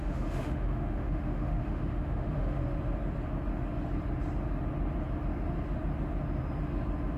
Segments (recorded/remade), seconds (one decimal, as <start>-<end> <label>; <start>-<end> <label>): 0.0-2.6 remade; 2.6-7.2 recorded